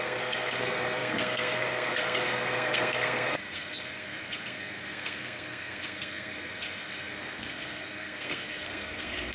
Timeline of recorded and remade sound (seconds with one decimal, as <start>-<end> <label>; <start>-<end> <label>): 0.0-9.3 remade